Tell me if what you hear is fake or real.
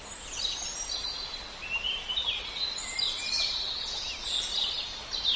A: real